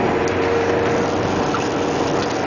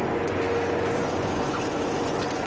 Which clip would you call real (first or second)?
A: first